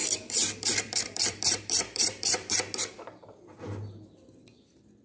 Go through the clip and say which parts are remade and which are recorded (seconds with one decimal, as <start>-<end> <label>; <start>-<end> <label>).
0.0-2.5 remade; 2.5-5.0 recorded